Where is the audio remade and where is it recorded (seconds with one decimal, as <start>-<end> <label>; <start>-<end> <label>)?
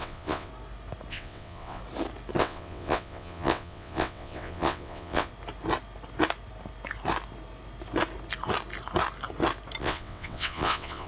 0.0-0.5 remade; 0.5-1.1 recorded; 1.1-1.8 remade; 1.8-2.4 recorded; 2.4-5.3 remade; 5.3-9.8 recorded; 9.8-11.1 remade